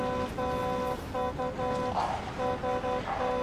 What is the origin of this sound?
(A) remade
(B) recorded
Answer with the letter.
B